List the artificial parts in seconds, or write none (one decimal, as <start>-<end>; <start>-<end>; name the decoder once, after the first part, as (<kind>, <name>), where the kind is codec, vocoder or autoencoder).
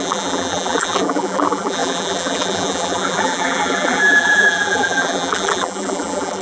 0.0-6.4 (vocoder, BigVGAN v2)